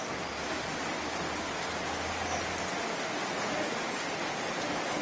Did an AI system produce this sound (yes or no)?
no